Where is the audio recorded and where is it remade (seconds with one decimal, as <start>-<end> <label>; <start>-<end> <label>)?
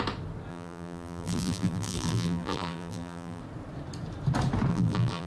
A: 0.0-0.5 recorded; 0.5-3.4 remade; 3.4-4.7 recorded; 4.7-5.3 remade